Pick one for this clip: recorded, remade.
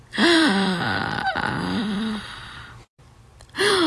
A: remade